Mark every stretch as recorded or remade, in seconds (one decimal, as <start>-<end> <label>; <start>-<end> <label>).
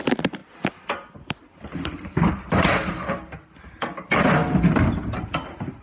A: 0.0-5.8 recorded